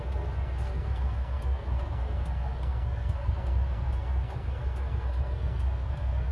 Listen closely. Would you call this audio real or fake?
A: fake